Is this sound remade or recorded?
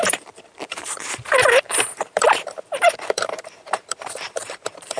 remade